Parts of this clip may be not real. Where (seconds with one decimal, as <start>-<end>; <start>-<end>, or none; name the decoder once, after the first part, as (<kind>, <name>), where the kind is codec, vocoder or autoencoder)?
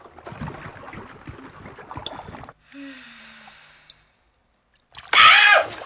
none